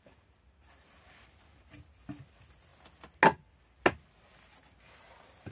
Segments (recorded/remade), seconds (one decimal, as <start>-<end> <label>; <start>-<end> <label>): 0.0-5.5 recorded